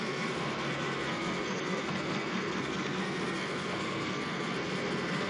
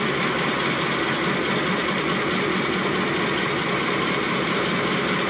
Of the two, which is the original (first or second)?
second